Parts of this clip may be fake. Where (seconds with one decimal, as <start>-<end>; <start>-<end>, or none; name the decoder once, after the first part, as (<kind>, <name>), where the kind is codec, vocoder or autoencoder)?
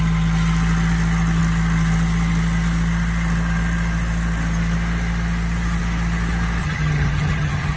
6.6-7.8 (vocoder, HiFi-GAN)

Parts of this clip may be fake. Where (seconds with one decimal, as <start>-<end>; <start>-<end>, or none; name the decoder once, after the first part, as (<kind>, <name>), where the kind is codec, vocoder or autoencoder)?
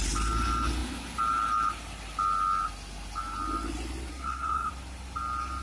4.1-4.7 (codec, SNAC)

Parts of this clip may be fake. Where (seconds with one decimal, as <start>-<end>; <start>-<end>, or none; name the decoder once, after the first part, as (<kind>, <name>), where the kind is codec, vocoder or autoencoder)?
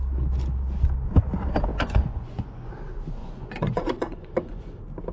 1.7-2.7 (vocoder, Vocos); 3.2-4.6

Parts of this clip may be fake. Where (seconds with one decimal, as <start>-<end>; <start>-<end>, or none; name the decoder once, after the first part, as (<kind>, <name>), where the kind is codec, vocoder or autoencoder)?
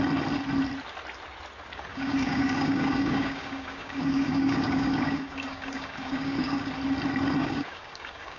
1.9-6.7 (codec, DAC); 7.4-8.4